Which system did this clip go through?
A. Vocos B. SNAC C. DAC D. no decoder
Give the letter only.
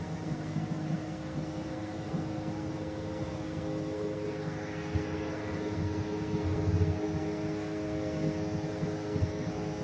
B